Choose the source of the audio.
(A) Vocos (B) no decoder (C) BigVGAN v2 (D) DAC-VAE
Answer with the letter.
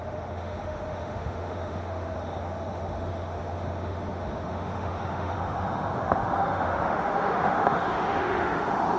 D